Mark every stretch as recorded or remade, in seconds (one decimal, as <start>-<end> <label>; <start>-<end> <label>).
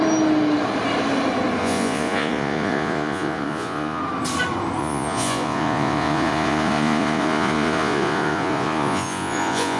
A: 0.0-1.6 recorded; 1.6-4.0 remade; 4.0-4.8 recorded; 4.8-9.8 remade